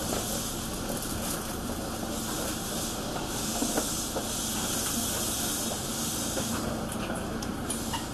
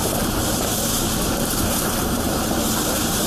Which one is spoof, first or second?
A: second